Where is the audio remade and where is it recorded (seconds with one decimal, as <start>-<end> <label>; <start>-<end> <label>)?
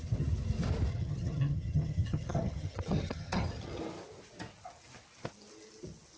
0.0-0.9 recorded; 0.9-3.8 remade; 3.8-6.2 recorded